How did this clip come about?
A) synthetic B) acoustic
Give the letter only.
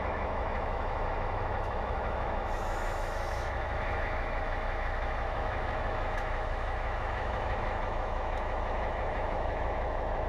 A